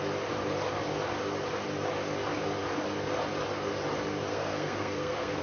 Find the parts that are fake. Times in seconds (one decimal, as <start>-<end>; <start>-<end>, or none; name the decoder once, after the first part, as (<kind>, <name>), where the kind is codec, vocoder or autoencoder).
4.3-5.4 (codec, SNAC)